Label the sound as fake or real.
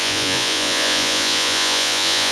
fake